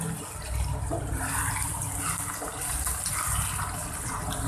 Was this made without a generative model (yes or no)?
yes